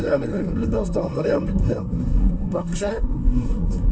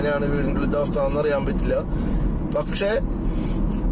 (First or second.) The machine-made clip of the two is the first